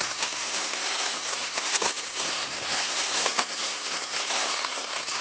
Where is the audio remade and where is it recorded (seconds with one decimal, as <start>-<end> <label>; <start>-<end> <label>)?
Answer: 0.0-5.2 remade

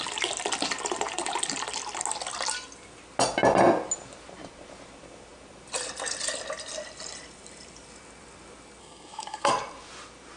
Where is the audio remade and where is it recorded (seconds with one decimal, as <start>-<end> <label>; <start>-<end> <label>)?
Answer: 0.0-8.8 recorded; 8.8-9.5 remade; 9.5-10.4 recorded

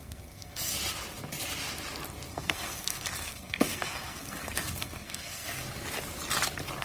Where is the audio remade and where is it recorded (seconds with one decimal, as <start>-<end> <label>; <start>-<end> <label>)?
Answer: 0.0-0.7 remade; 0.7-2.3 recorded; 2.3-5.6 remade; 5.6-6.8 recorded